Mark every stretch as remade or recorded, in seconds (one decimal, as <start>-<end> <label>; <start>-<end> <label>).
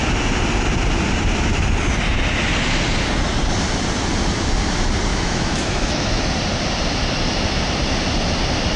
0.0-5.1 recorded; 5.1-6.2 remade; 6.2-8.8 recorded